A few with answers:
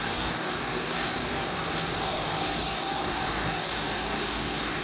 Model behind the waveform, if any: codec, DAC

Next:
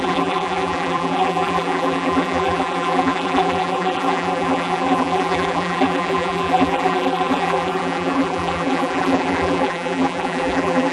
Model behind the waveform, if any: vocoder, BigVGAN v2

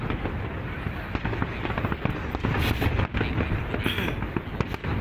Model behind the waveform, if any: none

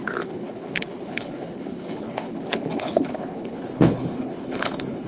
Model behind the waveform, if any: codec, HILCodec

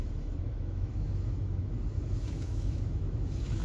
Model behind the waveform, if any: autoencoder, DAC-VAE